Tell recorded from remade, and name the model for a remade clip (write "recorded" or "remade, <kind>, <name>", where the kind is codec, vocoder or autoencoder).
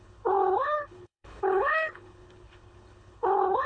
remade, codec, HILCodec